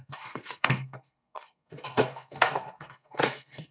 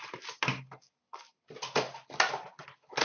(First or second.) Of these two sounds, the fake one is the first